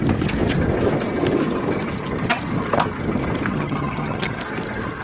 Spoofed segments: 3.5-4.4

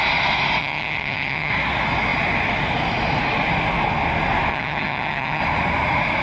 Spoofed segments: 0.6-1.5; 4.5-5.4